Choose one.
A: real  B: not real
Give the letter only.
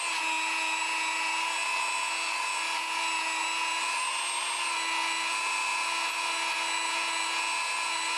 A